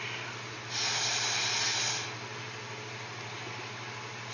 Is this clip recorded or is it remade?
recorded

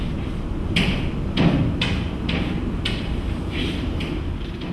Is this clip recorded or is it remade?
remade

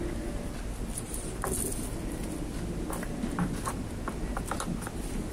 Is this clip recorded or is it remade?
recorded